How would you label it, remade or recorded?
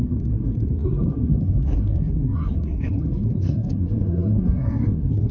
remade